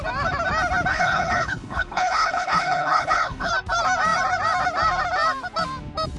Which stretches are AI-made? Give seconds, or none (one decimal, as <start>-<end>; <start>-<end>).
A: 0.9-3.5